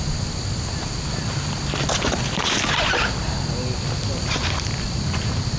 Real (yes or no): yes